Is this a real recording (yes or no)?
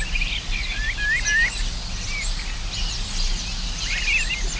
yes